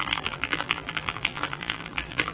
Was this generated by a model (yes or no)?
yes